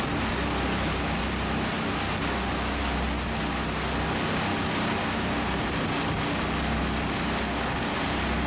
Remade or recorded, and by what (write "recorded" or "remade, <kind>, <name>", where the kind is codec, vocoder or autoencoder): recorded